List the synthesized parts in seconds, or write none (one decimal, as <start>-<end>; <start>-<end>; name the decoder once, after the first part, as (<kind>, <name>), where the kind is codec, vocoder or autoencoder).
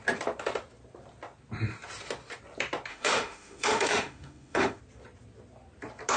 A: 2.9-4.8 (autoencoder, DAC-VAE)